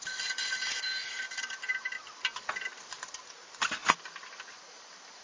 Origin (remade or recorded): recorded